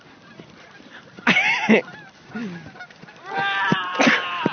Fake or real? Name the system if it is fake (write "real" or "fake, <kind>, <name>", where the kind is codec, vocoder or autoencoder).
real